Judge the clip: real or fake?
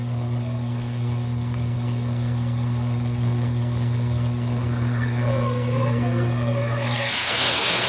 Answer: fake